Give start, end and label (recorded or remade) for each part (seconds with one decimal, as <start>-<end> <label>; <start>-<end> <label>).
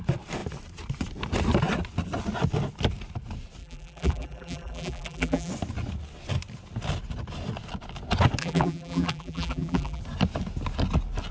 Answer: 0.0-3.6 recorded; 3.6-5.5 remade; 5.5-8.4 recorded; 8.4-10.0 remade; 10.0-11.3 recorded